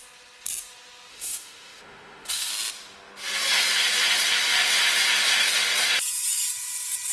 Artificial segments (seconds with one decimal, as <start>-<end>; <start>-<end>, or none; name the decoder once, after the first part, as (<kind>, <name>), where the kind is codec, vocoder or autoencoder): 1.1-2.5 (autoencoder, DAC-VAE)